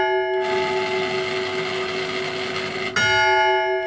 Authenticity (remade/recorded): recorded